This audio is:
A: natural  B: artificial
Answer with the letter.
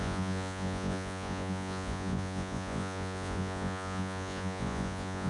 B